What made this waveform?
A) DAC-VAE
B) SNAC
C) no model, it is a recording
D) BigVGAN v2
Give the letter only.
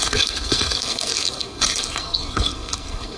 B